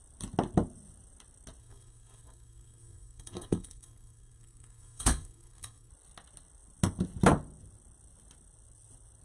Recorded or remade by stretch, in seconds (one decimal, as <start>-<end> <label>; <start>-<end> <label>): 0.0-1.6 recorded; 1.6-5.9 remade; 5.9-9.2 recorded